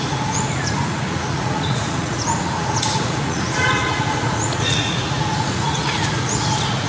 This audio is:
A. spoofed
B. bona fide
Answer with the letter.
A